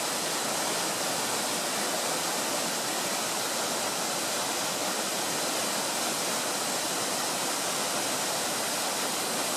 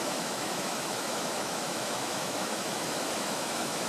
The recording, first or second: first